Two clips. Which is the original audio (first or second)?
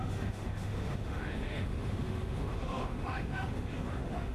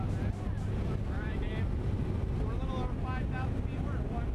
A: second